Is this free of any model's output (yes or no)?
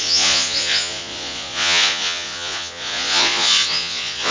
no